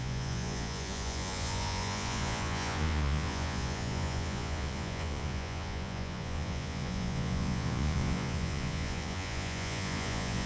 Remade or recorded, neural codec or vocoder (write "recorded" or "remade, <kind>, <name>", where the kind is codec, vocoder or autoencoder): remade, vocoder, Vocos